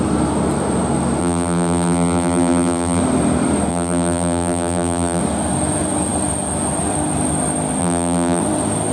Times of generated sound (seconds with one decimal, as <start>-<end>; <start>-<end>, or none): 1.2-3.0; 3.7-5.2; 7.8-8.4